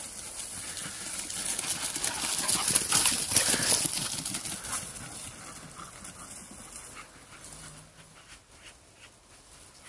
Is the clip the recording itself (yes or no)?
yes